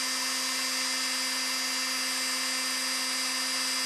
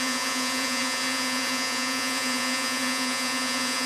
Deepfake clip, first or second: second